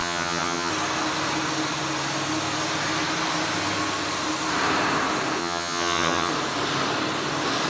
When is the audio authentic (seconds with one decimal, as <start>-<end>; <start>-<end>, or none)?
0.7-5.4; 6.3-7.7